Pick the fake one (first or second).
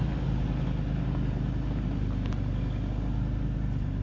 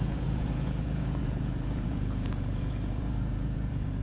second